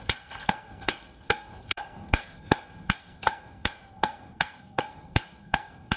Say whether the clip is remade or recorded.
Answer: remade